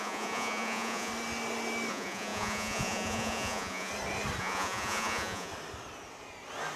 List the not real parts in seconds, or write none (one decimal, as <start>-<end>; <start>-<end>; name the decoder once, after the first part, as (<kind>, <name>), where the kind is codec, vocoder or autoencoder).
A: 0.0-1.1 (vocoder, Vocos); 1.9-3.9; 4.4-5.5